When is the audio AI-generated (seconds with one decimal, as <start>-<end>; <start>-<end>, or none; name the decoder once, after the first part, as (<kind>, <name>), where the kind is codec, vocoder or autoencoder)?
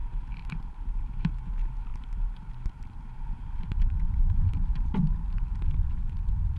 0.0-1.5 (vocoder, BigVGAN v2); 1.9-5.0